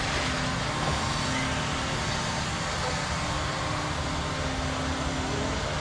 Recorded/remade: recorded